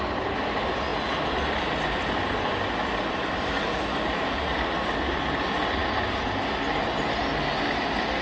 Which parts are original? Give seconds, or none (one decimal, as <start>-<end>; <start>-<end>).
0.0-8.2